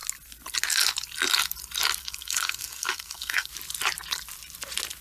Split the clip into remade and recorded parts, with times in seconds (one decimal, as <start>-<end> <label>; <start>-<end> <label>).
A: 0.0-2.0 recorded; 2.0-3.5 remade; 3.5-5.0 recorded